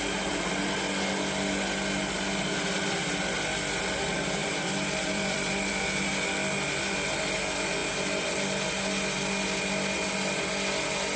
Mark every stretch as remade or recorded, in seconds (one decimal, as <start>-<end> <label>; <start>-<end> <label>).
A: 0.0-4.4 recorded; 4.4-5.7 remade; 5.7-11.2 recorded